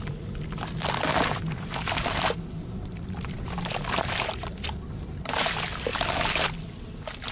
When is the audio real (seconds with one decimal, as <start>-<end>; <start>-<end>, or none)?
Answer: 0.0-1.1; 5.5-7.3